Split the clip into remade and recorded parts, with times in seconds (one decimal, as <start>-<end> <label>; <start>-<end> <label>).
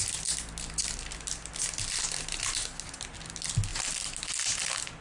0.0-5.0 recorded